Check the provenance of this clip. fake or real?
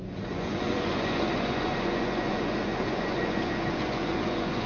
fake